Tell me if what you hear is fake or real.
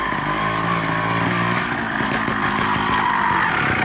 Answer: real